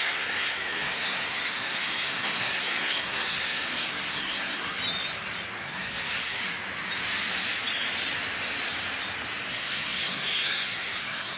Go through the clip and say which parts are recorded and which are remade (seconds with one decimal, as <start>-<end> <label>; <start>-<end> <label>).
0.0-4.8 remade; 4.8-5.6 recorded; 5.6-6.4 remade; 6.4-9.5 recorded; 9.5-11.4 remade